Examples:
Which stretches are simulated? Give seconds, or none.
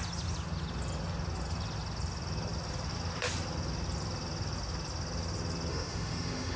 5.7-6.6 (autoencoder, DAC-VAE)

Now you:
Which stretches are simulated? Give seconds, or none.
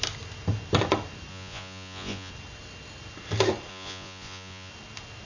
1.3-2.3 (vocoder, Vocos); 3.7-4.7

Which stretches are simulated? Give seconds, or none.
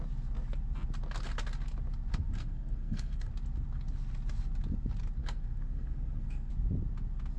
2.1-3.3 (codec, SNAC); 5.2-6.5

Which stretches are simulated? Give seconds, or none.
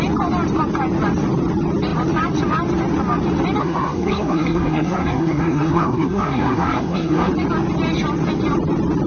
3.6-7.3 (codec, SNAC)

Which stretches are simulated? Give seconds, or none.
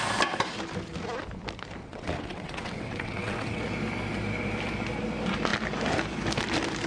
1.8-3.6 (vocoder, WaveNeXt)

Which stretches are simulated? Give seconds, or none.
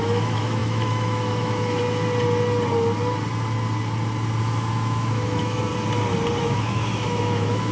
0.0-1.8 (autoencoder, DAC-VAE); 4.4-5.7; 6.4-7.7